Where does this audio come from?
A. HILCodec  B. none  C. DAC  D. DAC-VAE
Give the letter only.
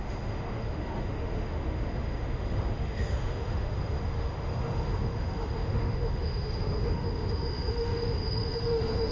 D